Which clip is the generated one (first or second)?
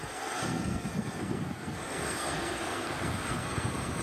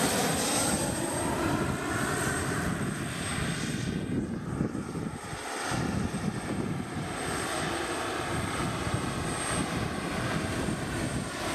first